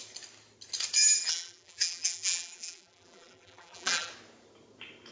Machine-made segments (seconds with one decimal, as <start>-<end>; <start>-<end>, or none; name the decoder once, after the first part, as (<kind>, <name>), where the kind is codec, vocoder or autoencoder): 1.0-4.1 (vocoder, BigVGAN v2)